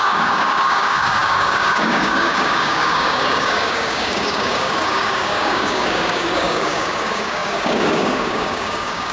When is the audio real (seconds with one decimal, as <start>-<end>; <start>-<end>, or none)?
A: none